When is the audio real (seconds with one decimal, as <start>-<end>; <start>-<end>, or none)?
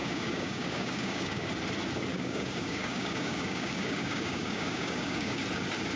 1.5-2.1; 5.4-6.0